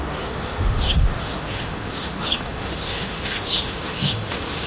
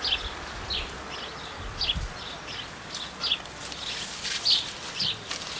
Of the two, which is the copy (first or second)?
first